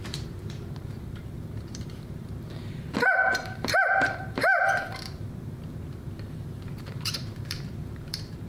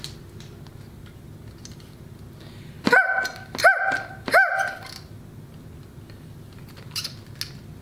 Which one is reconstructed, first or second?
first